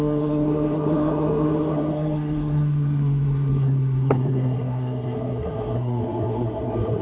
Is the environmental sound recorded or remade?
remade